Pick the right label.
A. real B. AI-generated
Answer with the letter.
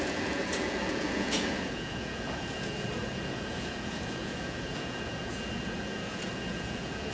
B